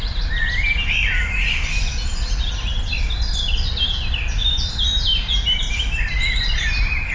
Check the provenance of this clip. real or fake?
real